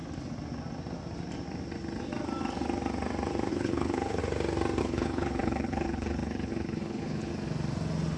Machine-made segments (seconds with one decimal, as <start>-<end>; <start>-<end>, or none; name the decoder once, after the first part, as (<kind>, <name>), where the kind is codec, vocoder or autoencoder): 3.5-4.2 (codec, HILCodec); 4.8-7.3